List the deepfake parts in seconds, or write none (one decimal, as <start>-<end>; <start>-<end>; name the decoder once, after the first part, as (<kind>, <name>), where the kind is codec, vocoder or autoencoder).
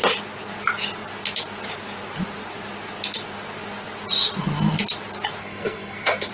5.4-6.3 (codec, SNAC)